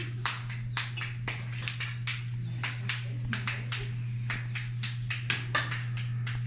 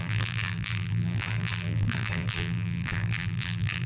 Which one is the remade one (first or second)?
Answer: second